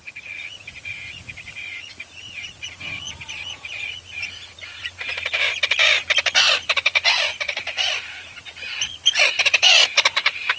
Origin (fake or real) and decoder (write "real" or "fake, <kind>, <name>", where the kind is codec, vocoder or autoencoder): fake, vocoder, Vocos